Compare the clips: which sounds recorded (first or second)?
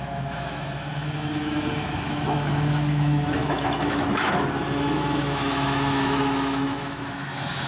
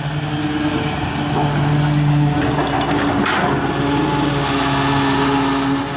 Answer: second